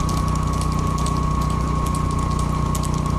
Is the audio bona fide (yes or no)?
yes